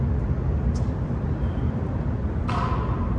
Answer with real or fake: real